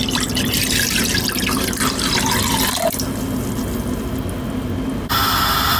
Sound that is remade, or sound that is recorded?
recorded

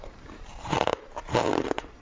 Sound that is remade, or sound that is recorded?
remade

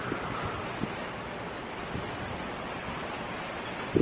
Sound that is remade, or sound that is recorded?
recorded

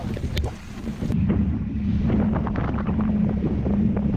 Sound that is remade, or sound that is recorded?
recorded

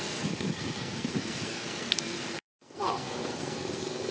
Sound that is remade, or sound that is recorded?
remade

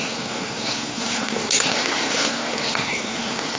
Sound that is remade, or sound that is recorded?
remade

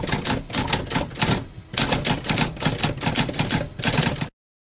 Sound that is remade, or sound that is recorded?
recorded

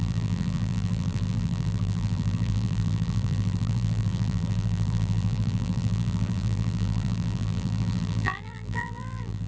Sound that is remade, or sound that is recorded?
remade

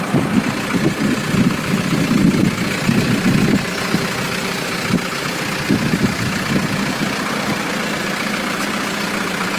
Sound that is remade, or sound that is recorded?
recorded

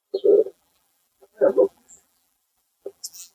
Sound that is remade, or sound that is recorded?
remade